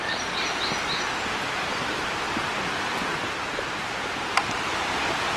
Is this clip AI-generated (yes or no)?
no